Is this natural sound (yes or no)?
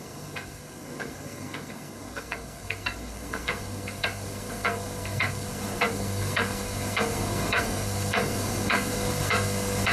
no